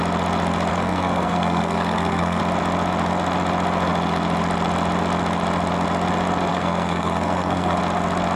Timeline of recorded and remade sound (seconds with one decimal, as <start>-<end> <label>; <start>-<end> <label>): 0.0-0.7 recorded; 0.7-2.4 remade; 2.4-6.5 recorded; 6.5-7.8 remade; 7.8-8.4 recorded

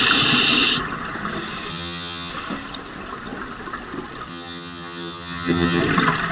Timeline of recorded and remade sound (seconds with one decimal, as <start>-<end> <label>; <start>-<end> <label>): 0.0-1.7 recorded; 1.7-2.3 remade; 2.3-4.3 recorded; 4.3-5.8 remade; 5.8-6.3 recorded

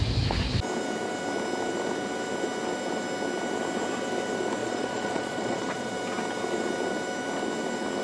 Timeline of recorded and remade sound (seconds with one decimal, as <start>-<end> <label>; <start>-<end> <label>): 0.0-4.6 recorded; 4.6-5.9 remade; 5.9-8.0 recorded

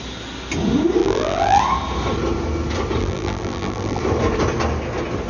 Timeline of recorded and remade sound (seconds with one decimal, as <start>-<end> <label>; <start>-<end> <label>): 0.0-1.0 recorded; 1.0-1.6 remade; 1.6-3.0 recorded; 3.0-4.0 remade; 4.0-5.3 recorded